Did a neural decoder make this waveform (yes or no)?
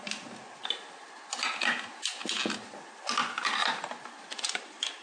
no